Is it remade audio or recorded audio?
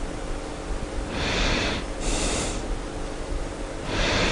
recorded